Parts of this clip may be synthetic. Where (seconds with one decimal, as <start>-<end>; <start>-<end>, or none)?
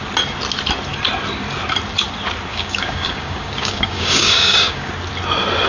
2.5-4.9